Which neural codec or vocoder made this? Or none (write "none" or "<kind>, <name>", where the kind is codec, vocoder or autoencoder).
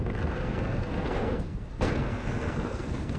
codec, SNAC